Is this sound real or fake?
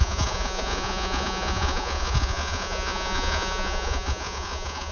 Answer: fake